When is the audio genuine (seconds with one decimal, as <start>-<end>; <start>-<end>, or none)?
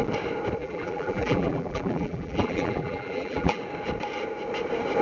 0.0-0.6; 3.6-5.0